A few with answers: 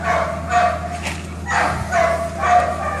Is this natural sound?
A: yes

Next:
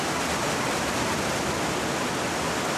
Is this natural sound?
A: yes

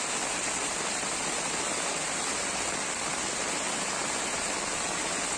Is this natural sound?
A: yes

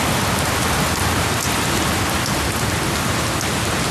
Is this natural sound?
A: yes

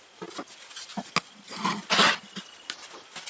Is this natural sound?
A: yes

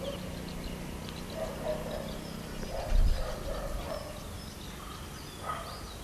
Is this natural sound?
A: yes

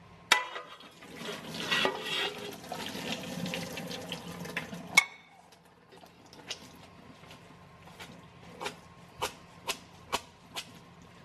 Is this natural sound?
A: yes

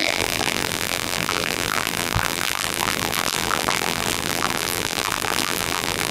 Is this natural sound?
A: no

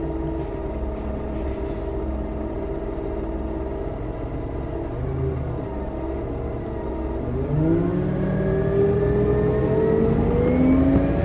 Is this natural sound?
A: yes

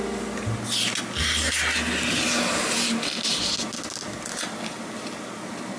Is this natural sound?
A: yes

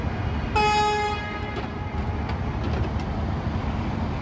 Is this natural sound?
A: yes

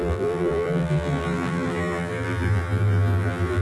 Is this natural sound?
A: no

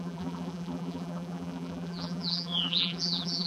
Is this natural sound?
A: no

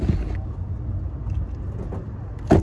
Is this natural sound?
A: yes